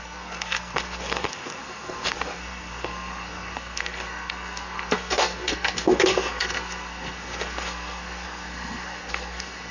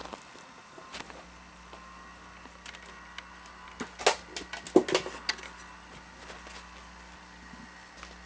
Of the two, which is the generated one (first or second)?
first